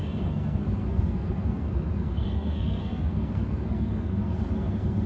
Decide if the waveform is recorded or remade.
remade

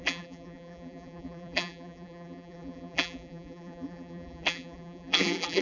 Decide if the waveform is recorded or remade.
remade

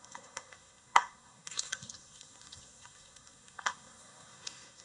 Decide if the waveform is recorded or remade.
remade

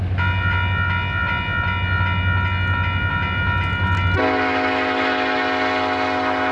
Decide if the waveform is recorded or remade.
recorded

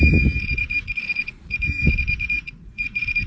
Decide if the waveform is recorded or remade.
remade